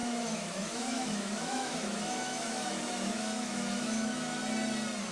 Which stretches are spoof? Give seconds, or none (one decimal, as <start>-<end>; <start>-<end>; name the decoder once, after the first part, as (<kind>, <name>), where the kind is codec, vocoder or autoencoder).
0.0-4.4 (autoencoder, DAC-VAE)